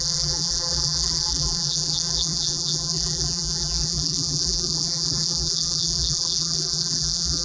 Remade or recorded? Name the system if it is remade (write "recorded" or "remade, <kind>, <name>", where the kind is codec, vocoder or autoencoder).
remade, vocoder, BigVGAN v2